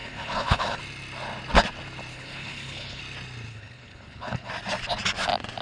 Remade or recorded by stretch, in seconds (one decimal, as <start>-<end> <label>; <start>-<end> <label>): 0.0-0.8 remade; 0.8-2.1 recorded; 2.1-3.0 remade; 3.0-3.5 recorded; 3.5-4.5 remade; 4.5-5.6 recorded